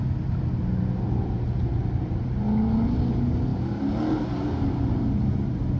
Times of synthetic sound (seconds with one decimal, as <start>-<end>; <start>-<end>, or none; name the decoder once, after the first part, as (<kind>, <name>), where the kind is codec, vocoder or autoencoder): none